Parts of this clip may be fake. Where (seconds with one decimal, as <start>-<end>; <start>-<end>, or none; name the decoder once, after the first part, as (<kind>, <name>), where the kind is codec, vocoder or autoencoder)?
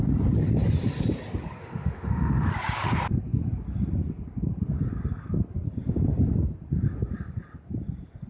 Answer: 1.6-2.5 (autoencoder, DAC-VAE)